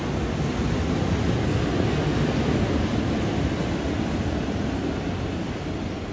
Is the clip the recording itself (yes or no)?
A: yes